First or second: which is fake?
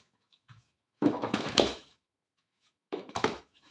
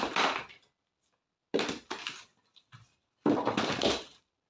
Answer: first